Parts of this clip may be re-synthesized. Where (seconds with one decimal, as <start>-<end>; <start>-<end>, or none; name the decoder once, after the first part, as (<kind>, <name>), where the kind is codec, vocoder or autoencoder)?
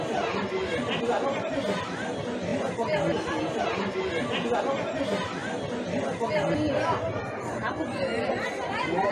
0.7-1.5 (vocoder, BigVGAN v2)